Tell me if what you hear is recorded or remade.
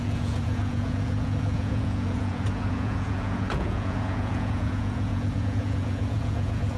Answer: remade